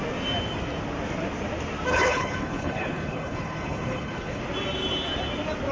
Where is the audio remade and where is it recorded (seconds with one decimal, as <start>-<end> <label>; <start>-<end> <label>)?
0.0-1.9 recorded; 1.9-4.4 remade; 4.4-5.7 recorded